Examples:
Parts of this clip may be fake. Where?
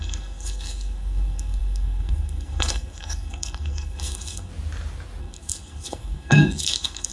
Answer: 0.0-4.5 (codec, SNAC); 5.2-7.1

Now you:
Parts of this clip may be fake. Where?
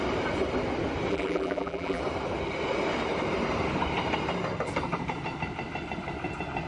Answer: 1.1-2.0 (vocoder, BigVGAN v2)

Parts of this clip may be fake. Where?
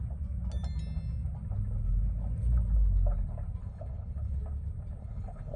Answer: 3.6-4.4 (codec, HILCodec); 5.0-5.6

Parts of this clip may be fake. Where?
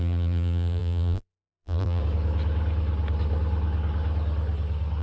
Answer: 0.0-2.0 (vocoder, BigVGAN v2)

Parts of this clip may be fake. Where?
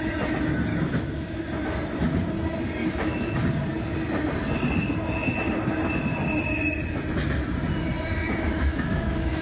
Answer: 0.7-1.4 (autoencoder, DAC-VAE); 2.8-3.4; 8.2-9.4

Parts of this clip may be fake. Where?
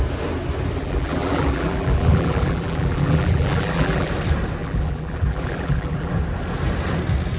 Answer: 0.8-4.1 (vocoder, BigVGAN v2); 4.6-6.1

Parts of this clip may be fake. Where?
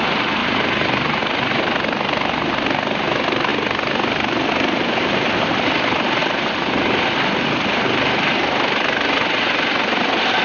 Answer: 0.4-1.2 (vocoder, BigVGAN v2); 6.2-6.7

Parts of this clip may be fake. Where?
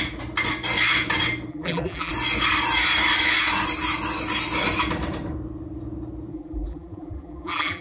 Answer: 1.5-2.1 (vocoder, BigVGAN v2); 6.3-7.8